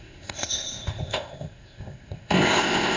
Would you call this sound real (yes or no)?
no